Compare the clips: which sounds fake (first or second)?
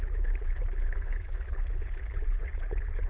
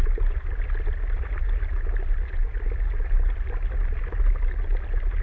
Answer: first